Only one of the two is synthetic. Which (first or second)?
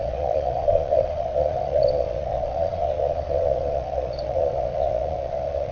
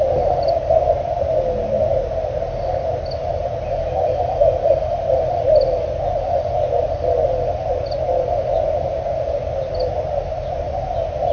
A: first